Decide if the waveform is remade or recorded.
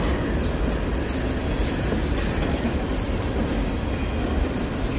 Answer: recorded